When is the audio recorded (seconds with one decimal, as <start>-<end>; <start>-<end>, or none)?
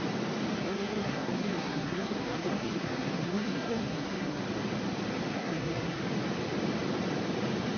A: 0.0-0.6; 4.4-5.3; 6.0-7.8